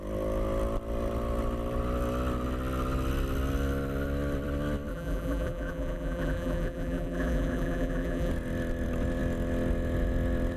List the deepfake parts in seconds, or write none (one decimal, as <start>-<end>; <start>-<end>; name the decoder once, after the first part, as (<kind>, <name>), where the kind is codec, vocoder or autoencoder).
4.9-8.3 (vocoder, BigVGAN v2)